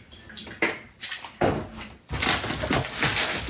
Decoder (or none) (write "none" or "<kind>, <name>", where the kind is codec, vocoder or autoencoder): none